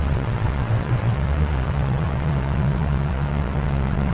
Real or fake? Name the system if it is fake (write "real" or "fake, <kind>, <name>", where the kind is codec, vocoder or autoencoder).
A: fake, vocoder, WaveNeXt